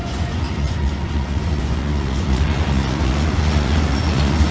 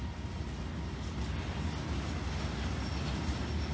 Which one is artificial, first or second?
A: first